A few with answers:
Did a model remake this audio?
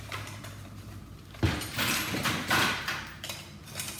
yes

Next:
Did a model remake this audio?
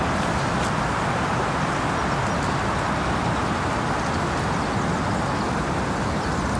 no